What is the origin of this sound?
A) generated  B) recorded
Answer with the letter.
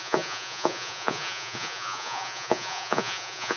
A